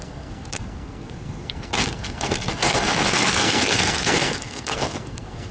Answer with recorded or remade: remade